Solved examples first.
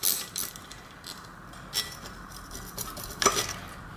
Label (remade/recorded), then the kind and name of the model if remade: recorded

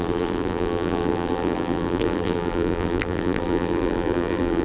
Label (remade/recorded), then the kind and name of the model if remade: remade, vocoder, BigVGAN v2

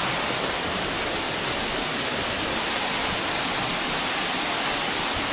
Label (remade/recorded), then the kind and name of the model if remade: recorded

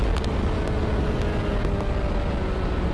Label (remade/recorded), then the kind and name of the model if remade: recorded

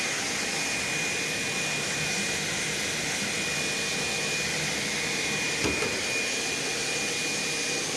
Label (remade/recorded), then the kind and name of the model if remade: recorded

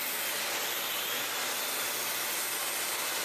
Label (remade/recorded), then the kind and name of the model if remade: recorded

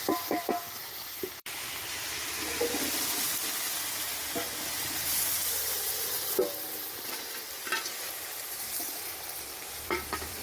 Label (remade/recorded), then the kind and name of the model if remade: remade, vocoder, BigVGAN v2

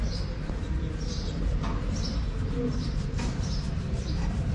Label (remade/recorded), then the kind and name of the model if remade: remade, vocoder, BigVGAN v2